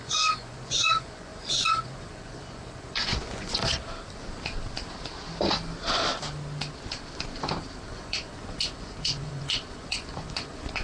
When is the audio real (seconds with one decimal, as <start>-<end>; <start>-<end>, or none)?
3.6-7.8